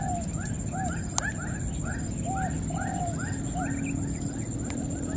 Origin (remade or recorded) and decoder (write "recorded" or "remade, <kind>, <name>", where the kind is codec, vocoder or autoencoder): recorded